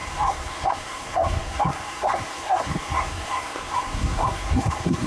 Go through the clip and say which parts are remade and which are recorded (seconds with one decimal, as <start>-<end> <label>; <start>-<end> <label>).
0.0-5.1 remade